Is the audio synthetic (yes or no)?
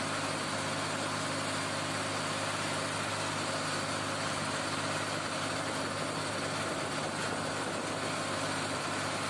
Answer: no